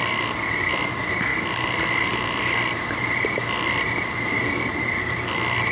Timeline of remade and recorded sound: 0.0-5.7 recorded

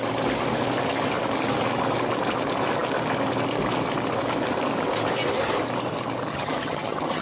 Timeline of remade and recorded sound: 0.0-6.3 recorded; 6.3-7.2 remade